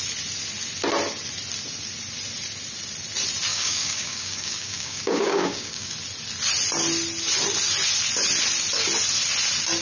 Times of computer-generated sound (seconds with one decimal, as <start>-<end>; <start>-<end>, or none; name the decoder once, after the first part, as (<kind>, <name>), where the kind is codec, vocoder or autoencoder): 3.5-5.9 (codec, DAC)